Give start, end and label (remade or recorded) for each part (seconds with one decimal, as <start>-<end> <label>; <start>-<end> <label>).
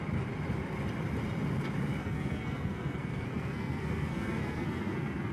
0.0-2.0 recorded; 2.0-5.3 remade